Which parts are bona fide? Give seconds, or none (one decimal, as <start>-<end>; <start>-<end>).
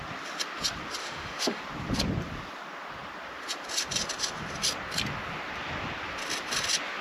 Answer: 0.0-1.0; 1.6-7.0